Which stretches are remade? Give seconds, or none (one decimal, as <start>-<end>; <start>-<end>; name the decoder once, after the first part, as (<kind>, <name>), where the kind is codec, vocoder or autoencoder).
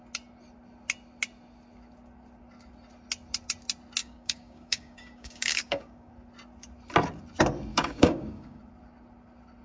4.0-6.1 (codec, DAC); 7.7-8.6